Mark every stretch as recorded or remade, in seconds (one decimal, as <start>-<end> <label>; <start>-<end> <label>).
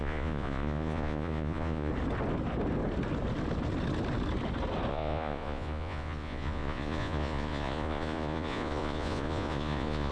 0.0-1.9 remade; 1.9-4.9 recorded; 4.9-10.1 remade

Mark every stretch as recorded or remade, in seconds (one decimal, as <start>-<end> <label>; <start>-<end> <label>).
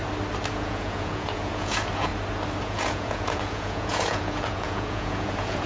0.0-0.5 recorded; 0.5-2.1 remade; 2.1-2.6 recorded; 2.6-5.7 remade